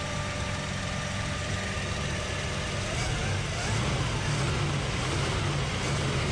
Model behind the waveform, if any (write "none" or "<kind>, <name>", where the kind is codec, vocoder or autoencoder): none